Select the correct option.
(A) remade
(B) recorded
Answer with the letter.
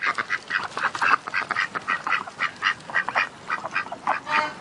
B